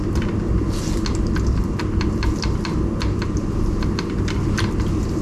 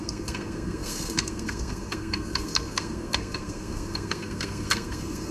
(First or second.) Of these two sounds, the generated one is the second